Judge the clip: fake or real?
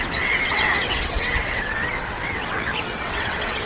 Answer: fake